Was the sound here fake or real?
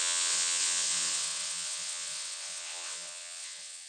fake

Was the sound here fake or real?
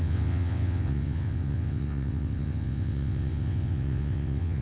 fake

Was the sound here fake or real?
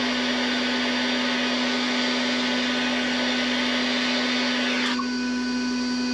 real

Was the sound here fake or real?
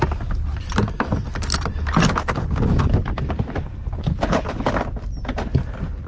real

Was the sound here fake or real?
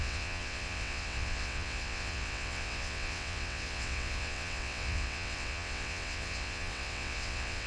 fake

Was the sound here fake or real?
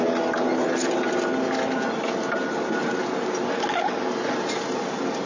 real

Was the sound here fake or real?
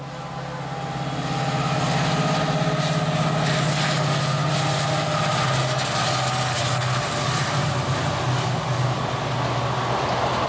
real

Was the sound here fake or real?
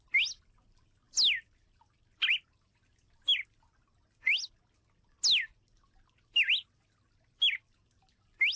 real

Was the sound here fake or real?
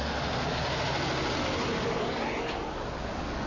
real